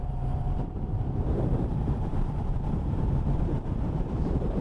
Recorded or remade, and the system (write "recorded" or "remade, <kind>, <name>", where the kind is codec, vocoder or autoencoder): remade, vocoder, BigVGAN v2